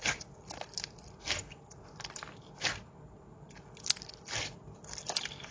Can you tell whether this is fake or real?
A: real